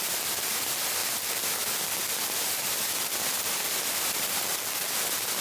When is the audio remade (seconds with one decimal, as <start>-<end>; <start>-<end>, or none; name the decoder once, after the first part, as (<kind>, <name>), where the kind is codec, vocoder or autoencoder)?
none